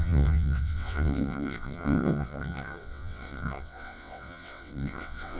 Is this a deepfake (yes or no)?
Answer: yes